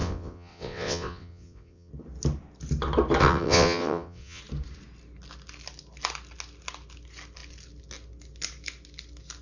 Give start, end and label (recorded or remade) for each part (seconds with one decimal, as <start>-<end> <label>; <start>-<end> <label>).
0.0-1.9 remade; 1.9-3.2 recorded; 3.2-4.4 remade; 4.4-9.4 recorded